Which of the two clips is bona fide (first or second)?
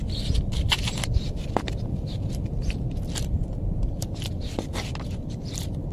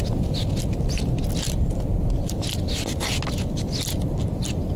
second